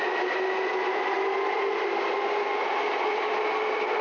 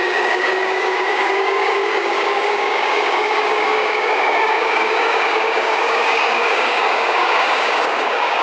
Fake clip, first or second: second